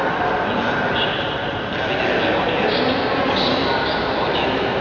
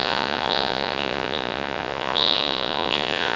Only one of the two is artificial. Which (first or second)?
second